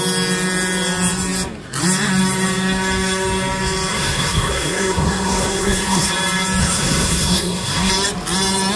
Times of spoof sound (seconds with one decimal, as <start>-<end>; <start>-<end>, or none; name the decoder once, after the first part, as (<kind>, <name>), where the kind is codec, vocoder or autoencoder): 3.9-6.1 (codec, SNAC); 6.6-7.9